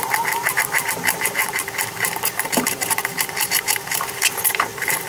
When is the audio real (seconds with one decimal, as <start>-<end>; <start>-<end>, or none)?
none